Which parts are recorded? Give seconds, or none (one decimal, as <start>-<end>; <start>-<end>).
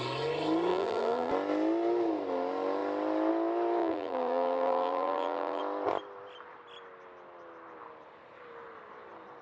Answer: 0.0-0.7; 1.3-3.8; 5.6-9.4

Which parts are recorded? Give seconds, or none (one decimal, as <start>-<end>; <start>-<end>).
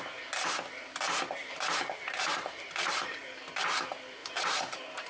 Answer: 0.0-1.4; 3.2-4.2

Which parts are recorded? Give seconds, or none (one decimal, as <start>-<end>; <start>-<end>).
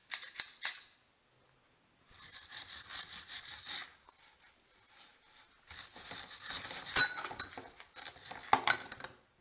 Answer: 0.0-9.4